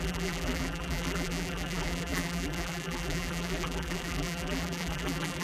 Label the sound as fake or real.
fake